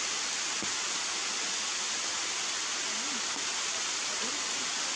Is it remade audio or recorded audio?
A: recorded